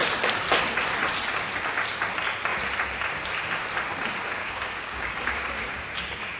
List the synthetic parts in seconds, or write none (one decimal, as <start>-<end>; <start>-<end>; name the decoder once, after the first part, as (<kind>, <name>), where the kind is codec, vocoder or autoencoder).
4.4-5.8 (codec, DAC)